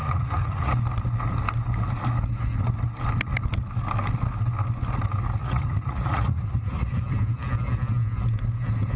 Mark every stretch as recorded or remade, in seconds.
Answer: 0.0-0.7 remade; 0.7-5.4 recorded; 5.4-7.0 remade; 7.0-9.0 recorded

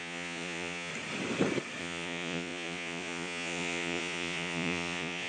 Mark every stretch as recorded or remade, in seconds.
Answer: 0.0-0.9 remade; 0.9-1.8 recorded; 1.8-5.3 remade

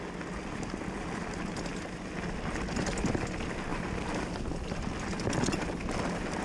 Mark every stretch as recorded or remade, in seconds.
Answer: 0.0-6.4 recorded